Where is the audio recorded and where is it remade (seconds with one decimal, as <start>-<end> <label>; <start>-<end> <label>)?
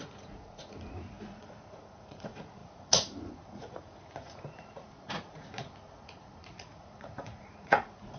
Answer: 0.0-8.2 remade